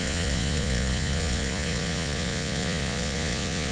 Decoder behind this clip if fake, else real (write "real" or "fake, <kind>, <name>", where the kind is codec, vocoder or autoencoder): fake, vocoder, Vocos